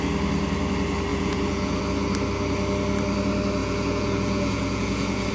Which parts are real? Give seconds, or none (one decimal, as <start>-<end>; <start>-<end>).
0.0-1.1; 1.8-3.6